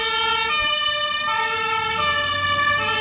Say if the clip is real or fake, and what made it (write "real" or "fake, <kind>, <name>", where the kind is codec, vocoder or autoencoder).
fake, vocoder, BigVGAN v2